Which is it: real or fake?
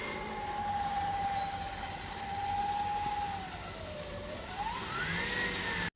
real